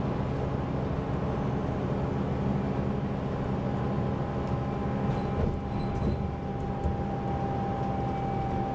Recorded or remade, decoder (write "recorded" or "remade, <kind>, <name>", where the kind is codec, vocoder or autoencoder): recorded